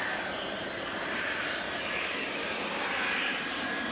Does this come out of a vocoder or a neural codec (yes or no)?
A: no